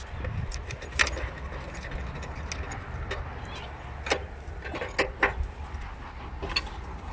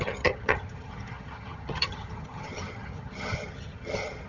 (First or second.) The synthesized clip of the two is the second